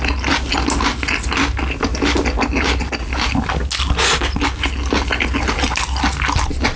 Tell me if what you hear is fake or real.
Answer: real